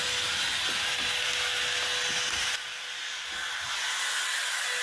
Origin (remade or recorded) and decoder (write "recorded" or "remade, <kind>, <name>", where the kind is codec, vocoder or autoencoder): recorded